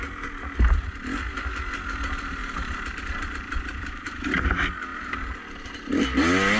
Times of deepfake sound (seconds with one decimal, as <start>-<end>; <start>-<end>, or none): 2.4-4.4; 4.9-5.4